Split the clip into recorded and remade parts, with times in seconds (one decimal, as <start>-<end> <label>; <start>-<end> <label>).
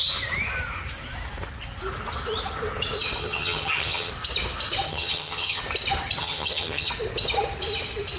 0.0-3.2 recorded; 3.2-4.1 remade; 4.1-4.9 recorded; 4.9-5.6 remade; 5.6-6.2 recorded; 6.2-6.9 remade; 6.9-8.2 recorded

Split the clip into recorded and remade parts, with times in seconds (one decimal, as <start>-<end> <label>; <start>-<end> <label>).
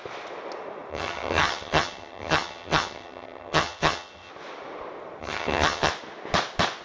0.0-0.9 recorded; 0.9-4.3 remade; 4.3-5.2 recorded; 5.2-5.9 remade; 5.9-6.8 recorded